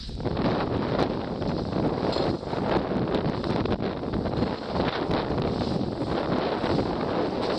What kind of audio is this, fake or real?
real